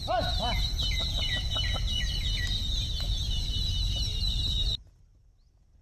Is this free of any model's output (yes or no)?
yes